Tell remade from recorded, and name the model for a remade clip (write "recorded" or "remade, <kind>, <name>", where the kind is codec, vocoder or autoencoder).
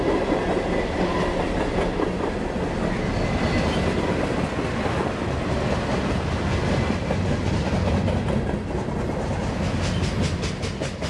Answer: recorded